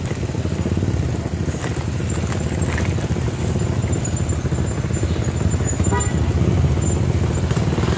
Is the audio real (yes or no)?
yes